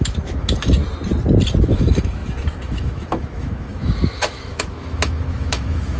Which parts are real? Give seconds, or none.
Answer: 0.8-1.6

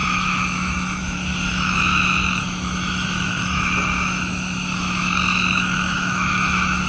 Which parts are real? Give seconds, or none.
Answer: none

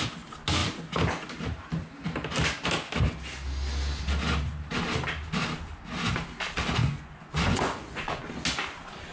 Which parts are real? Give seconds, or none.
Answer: 0.0-6.8; 8.2-9.1

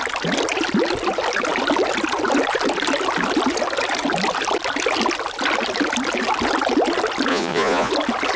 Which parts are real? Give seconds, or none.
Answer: 0.0-7.3; 7.9-8.4

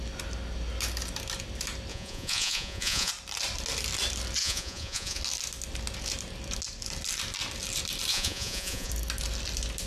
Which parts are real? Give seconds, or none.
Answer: 0.0-1.9; 3.1-4.4; 5.2-8.1; 8.9-9.9

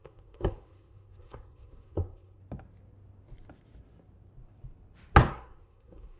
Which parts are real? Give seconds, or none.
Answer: 2.4-5.3